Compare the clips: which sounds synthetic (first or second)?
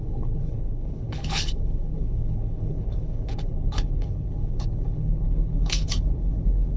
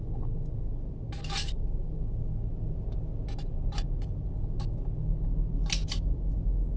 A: first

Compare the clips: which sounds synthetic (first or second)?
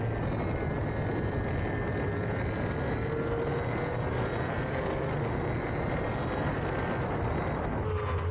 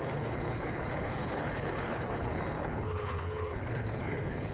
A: second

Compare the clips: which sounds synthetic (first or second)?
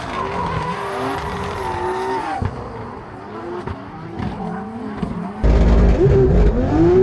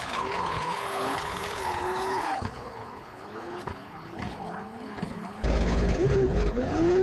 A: second